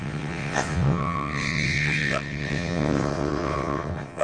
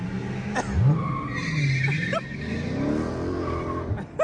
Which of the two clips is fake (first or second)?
first